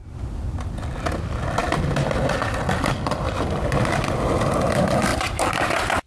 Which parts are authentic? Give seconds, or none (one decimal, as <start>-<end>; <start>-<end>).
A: 1.1-5.1